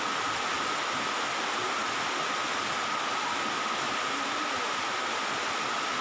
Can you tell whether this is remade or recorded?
recorded